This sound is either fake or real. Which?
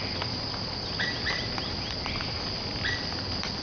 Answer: real